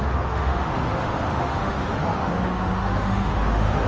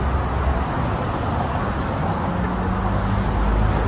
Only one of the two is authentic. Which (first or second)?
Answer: second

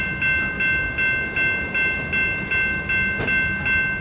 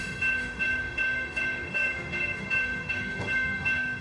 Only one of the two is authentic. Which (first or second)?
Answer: first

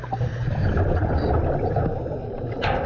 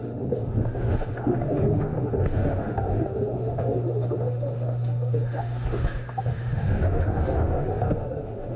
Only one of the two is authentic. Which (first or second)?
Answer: first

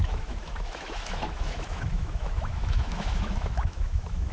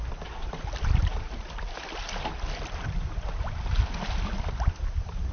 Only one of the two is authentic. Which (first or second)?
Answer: second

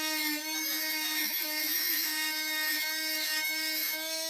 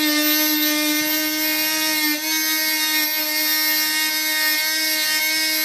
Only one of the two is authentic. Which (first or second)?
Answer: second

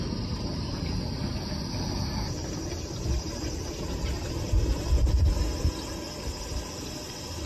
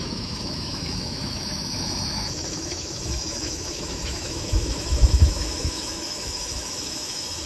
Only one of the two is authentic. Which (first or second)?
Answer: first